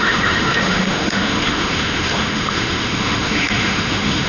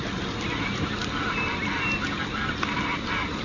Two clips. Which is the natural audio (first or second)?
second